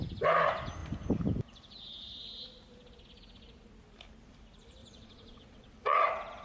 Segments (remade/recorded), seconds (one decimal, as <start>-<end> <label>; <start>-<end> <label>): 0.0-4.8 recorded; 4.8-6.0 remade; 6.0-6.4 recorded